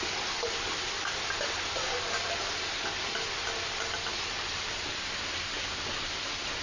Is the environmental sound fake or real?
real